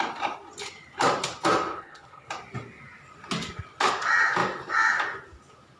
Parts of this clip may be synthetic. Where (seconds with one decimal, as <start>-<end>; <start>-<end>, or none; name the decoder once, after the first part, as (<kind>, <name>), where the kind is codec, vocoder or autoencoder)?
1.7-2.3 (codec, HILCodec)